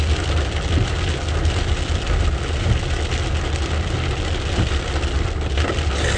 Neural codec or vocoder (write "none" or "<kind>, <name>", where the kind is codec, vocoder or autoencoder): none